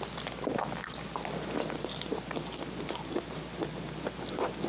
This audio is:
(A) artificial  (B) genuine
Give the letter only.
B